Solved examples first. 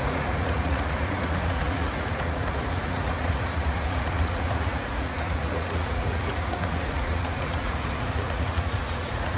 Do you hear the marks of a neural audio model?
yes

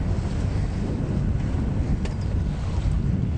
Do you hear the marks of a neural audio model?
no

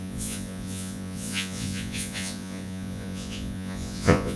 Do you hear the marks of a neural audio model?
yes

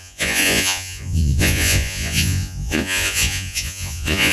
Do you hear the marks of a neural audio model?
yes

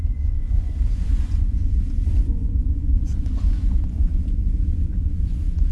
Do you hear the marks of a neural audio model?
yes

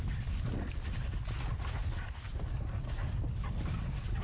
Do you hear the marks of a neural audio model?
no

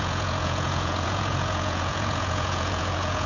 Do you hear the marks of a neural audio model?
yes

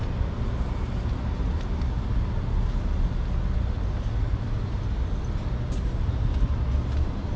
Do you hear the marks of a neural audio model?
no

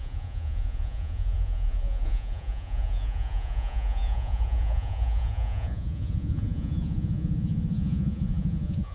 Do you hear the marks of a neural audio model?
yes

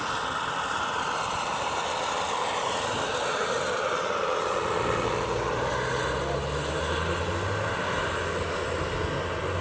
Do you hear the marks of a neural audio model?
no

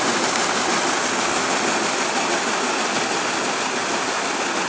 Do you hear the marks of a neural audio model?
no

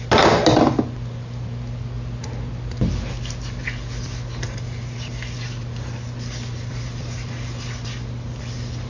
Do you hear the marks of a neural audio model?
no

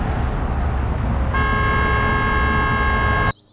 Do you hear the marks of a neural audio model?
no